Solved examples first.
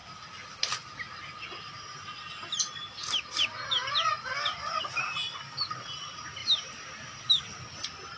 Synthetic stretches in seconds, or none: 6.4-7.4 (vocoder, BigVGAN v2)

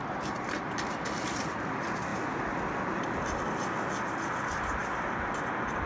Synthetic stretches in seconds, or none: none